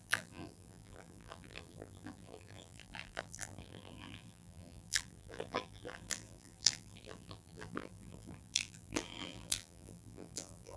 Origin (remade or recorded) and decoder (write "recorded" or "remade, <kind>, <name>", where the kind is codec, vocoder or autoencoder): remade, vocoder, BigVGAN v2